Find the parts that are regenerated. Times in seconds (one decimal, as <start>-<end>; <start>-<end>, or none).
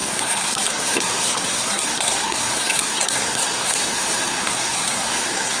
0.0-5.6